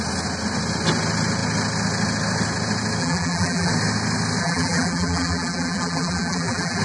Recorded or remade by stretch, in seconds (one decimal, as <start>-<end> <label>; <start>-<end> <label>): 0.0-3.0 recorded; 3.0-3.7 remade; 3.7-4.4 recorded; 4.4-6.8 remade